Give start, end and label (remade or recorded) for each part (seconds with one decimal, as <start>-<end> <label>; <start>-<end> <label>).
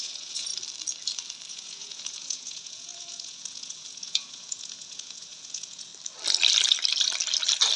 0.0-0.5 remade; 0.5-1.5 recorded; 1.5-5.9 remade; 5.9-7.8 recorded